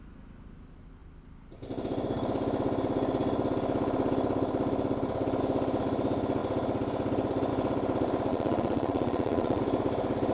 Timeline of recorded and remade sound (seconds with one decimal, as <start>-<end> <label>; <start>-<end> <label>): 0.0-8.3 recorded; 8.3-9.6 remade; 9.6-10.3 recorded